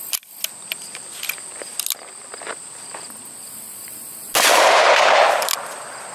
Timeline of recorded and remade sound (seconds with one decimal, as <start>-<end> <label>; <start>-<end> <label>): 0.0-4.2 recorded; 4.2-5.5 remade; 5.5-6.1 recorded

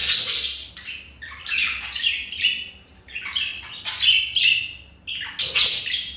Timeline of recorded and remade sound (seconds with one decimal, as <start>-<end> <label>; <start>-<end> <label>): 0.0-0.7 recorded; 0.7-3.5 remade; 3.5-6.2 recorded

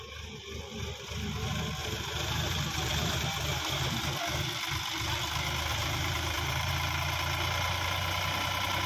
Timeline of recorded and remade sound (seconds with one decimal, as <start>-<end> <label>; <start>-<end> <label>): 0.0-1.8 recorded; 1.8-4.0 remade; 4.0-5.7 recorded; 5.7-6.7 remade; 6.7-8.9 recorded

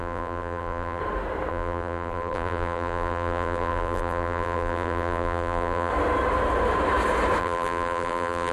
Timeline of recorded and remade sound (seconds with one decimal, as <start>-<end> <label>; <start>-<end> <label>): 0.0-1.0 remade; 1.0-1.5 recorded; 1.5-5.9 remade; 5.9-7.4 recorded; 7.4-8.5 remade